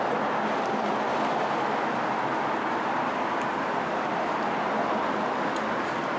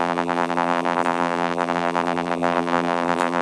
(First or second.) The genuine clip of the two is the first